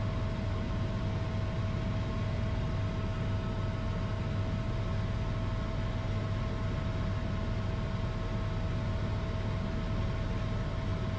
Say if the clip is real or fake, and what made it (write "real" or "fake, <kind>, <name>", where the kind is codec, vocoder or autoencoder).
real